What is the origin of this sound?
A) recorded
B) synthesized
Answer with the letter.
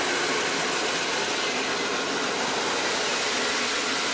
A